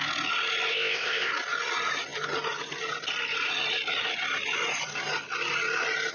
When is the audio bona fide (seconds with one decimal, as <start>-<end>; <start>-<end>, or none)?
0.0-0.7; 1.3-6.1